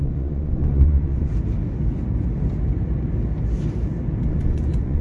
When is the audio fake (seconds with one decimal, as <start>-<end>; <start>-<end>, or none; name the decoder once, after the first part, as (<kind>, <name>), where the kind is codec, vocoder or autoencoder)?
0.0-1.3 (vocoder, Vocos); 4.3-5.0